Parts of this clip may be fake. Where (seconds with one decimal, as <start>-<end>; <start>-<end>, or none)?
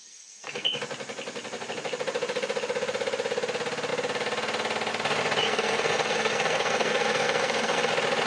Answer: 0.0-0.8; 5.4-7.9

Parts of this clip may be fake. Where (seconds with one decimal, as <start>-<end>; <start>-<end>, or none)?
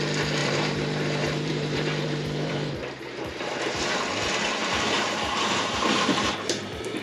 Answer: 0.4-3.9; 4.6-7.0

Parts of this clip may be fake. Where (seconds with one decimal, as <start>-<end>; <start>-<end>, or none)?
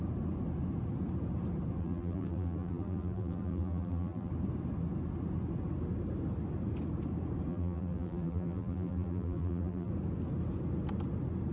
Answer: 1.8-4.3; 7.5-9.9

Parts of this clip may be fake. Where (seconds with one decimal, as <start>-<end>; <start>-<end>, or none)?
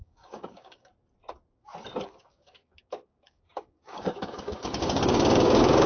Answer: 0.0-0.9; 2.2-5.9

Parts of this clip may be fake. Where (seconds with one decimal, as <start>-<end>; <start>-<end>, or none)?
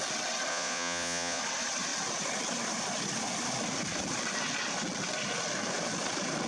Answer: 0.5-1.4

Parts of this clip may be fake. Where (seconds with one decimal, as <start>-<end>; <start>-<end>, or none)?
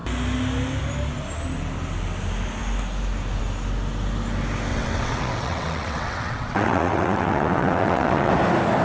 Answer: 4.7-8.3